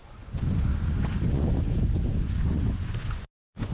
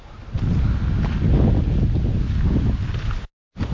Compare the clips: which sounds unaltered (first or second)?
second